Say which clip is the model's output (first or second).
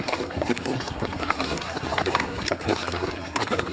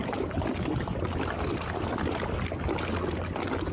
first